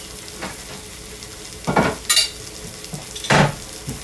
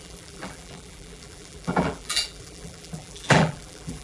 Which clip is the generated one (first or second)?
second